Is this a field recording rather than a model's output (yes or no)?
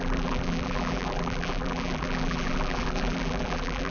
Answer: no